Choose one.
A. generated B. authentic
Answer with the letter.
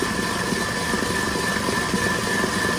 B